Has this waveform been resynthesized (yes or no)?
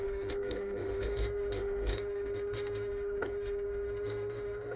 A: yes